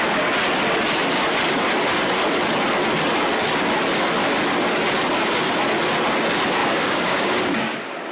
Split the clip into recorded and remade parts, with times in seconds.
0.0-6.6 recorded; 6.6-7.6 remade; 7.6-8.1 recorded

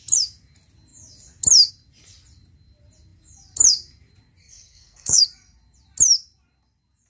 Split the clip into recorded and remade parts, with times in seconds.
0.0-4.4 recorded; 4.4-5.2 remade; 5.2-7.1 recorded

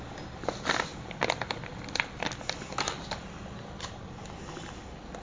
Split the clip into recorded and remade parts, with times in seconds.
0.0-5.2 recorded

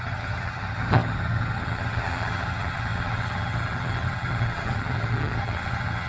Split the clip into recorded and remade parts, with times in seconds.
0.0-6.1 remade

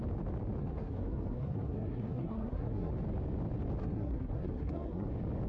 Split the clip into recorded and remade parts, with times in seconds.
0.0-0.6 recorded; 0.6-2.9 remade; 2.9-3.8 recorded; 3.8-5.1 remade; 5.1-5.5 recorded

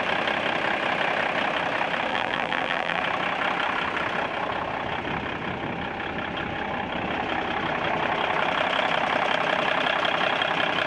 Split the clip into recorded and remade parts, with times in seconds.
0.0-2.1 recorded; 2.1-3.0 remade; 3.0-10.9 recorded

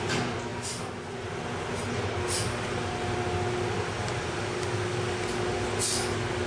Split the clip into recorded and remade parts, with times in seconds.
0.0-6.5 recorded